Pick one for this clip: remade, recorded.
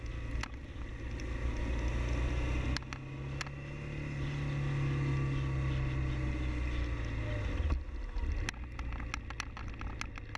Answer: recorded